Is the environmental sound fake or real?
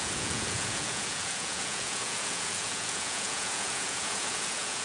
fake